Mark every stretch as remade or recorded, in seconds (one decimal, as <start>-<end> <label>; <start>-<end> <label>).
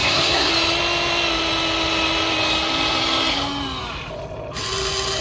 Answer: 0.0-0.5 remade; 0.5-5.2 recorded